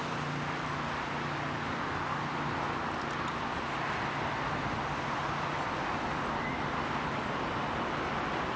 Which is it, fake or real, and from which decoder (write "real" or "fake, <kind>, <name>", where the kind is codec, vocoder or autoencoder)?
real